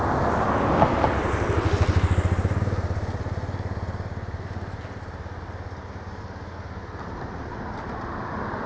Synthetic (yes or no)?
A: no